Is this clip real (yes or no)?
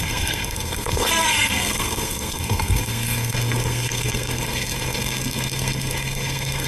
no